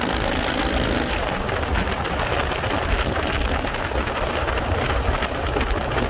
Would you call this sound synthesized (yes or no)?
no